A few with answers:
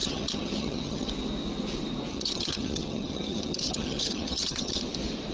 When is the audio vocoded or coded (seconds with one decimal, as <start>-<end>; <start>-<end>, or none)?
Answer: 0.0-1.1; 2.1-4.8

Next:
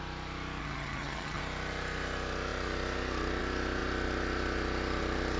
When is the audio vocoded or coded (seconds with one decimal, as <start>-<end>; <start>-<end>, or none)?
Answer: 0.6-1.4

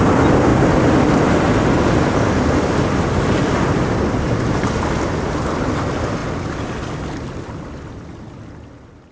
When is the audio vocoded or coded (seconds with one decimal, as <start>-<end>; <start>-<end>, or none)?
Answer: none

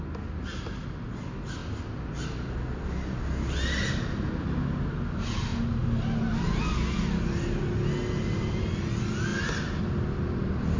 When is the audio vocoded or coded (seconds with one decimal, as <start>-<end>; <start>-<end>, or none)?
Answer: none